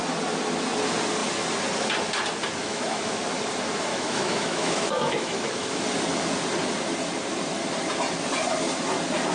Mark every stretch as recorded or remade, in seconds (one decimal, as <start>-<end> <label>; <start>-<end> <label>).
0.0-2.6 recorded; 2.6-3.2 remade; 3.2-3.9 recorded; 3.9-5.8 remade; 5.8-9.3 recorded